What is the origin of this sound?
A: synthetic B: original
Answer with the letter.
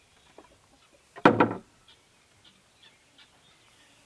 B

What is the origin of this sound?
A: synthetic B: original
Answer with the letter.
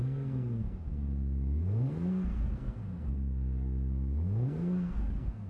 A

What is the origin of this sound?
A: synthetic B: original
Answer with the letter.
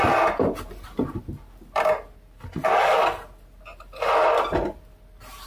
B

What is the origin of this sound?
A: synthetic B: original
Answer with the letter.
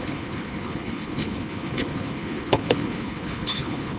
A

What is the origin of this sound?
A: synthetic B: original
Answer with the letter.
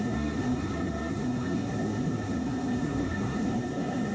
A